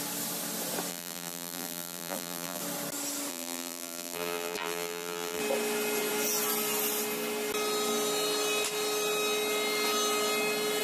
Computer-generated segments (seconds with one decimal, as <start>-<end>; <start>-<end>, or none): 0.9-2.6; 3.3-5.4